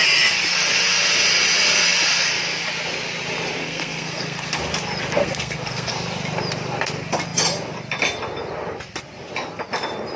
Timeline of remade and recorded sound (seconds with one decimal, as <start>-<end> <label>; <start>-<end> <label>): 0.0-3.6 recorded; 3.6-4.6 remade; 4.6-5.2 recorded; 5.2-5.9 remade; 5.9-10.2 recorded